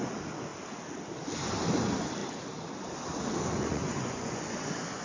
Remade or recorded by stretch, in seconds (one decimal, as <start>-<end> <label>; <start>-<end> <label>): 0.0-3.5 recorded; 3.5-5.0 remade